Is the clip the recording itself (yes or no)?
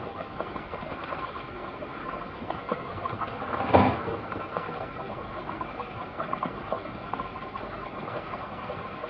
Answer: no